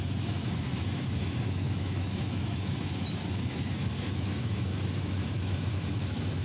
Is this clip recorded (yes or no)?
no